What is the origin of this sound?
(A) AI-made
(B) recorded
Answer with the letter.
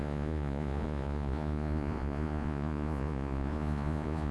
A